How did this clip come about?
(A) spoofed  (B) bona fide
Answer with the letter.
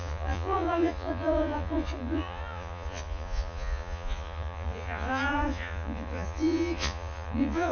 A